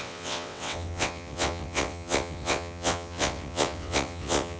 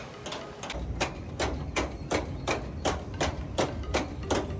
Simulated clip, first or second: first